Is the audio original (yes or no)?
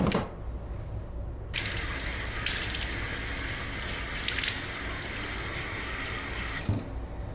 yes